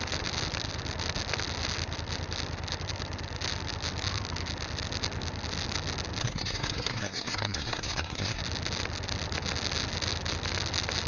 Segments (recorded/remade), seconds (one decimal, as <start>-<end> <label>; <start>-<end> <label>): 0.0-6.2 recorded; 6.2-8.4 remade; 8.4-11.1 recorded